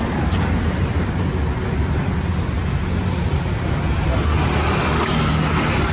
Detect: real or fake real